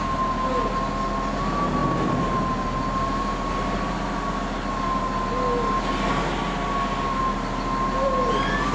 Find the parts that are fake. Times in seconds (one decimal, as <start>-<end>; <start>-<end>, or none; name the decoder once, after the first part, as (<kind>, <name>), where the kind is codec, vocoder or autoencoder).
none